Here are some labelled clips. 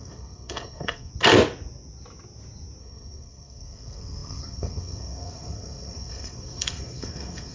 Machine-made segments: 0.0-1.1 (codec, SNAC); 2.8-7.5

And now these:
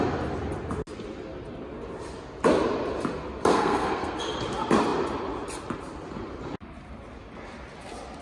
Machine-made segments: 3.5-4.2 (codec, SNAC)

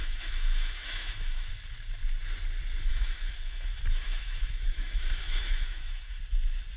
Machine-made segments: 0.0-1.5 (autoencoder, DAC-VAE); 2.9-6.2

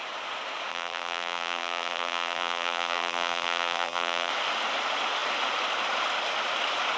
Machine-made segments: 0.7-4.3 (vocoder, BigVGAN v2)